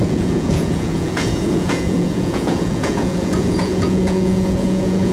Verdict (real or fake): fake